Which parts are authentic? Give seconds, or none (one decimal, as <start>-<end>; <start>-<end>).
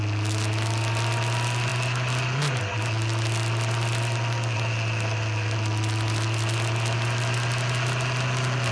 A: 0.0-8.7